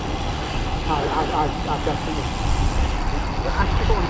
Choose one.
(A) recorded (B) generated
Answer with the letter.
A